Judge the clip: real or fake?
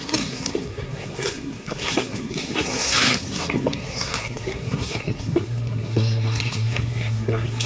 fake